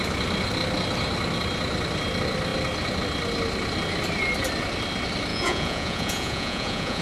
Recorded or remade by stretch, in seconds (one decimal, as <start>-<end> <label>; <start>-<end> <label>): 0.0-5.3 recorded; 5.3-7.0 remade